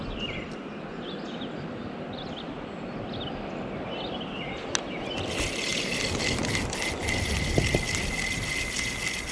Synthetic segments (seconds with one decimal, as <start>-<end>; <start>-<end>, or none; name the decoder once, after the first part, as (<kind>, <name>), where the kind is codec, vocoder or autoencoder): none